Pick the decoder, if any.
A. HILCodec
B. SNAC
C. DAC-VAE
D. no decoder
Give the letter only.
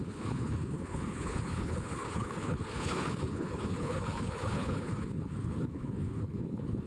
A